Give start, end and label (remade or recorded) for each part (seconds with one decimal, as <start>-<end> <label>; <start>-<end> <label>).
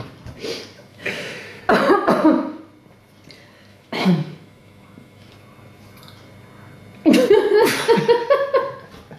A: 0.0-0.9 recorded; 0.9-1.6 remade; 1.6-3.7 recorded; 3.7-5.3 remade; 5.3-9.2 recorded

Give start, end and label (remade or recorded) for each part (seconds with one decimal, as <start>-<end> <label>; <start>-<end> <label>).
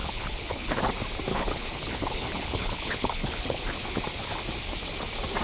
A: 0.0-0.9 remade; 0.9-1.3 recorded; 1.3-3.7 remade; 3.7-5.4 recorded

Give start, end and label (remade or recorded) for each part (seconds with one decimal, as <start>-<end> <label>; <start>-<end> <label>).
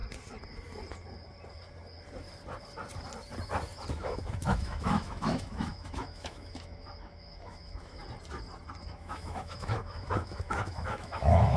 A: 0.0-3.9 recorded; 3.9-8.0 remade; 8.0-8.8 recorded; 8.8-11.6 remade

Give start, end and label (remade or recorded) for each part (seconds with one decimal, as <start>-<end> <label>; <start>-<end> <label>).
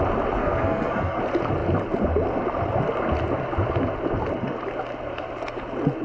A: 0.0-0.4 recorded; 0.4-1.2 remade; 1.2-6.0 recorded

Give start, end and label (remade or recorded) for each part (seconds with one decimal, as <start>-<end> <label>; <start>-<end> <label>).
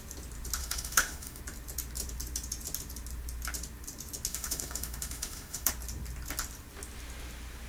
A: 0.0-0.6 recorded; 0.6-1.4 remade; 1.4-4.3 recorded; 4.3-5.7 remade; 5.7-7.7 recorded